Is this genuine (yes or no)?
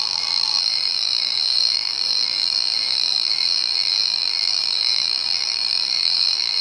no